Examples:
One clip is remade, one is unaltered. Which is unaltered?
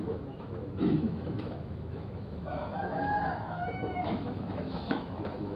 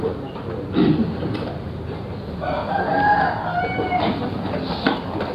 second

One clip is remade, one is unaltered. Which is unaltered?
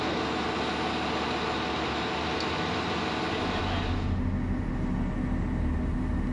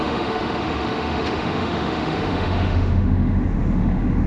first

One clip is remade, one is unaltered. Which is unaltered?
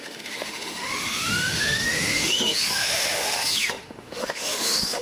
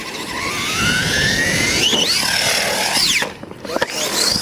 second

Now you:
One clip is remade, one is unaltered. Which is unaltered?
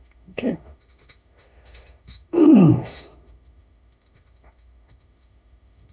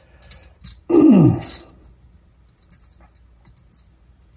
second